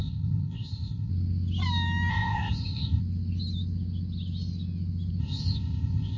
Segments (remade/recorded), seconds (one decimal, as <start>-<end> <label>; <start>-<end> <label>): 0.0-1.1 remade; 1.1-2.1 recorded; 2.1-3.0 remade; 3.0-5.2 recorded; 5.2-6.2 remade